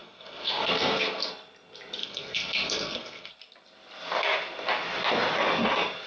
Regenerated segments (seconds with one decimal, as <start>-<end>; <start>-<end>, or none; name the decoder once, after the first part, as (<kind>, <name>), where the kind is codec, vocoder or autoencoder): 0.0-1.3 (codec, SNAC); 2.0-3.3